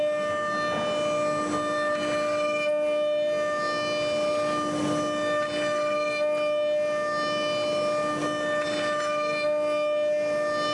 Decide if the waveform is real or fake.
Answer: real